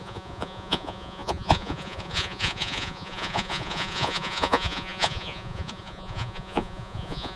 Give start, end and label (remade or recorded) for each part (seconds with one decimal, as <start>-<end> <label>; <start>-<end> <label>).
0.0-7.4 remade